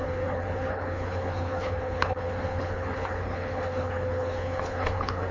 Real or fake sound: fake